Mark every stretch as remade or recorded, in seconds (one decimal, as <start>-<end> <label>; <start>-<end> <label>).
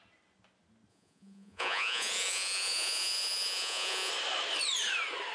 0.0-0.9 recorded; 0.9-4.1 remade; 4.1-5.3 recorded